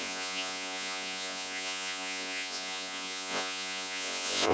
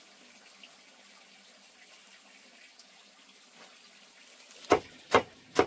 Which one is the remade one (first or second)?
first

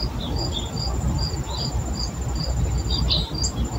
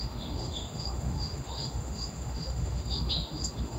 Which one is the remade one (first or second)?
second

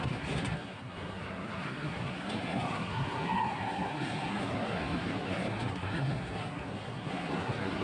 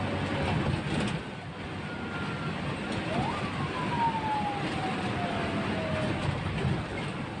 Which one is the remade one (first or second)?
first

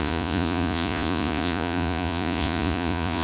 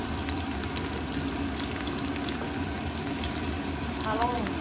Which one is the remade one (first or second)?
first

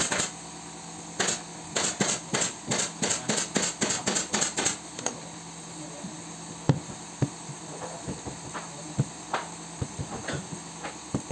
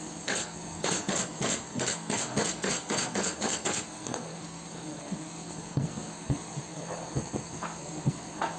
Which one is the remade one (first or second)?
second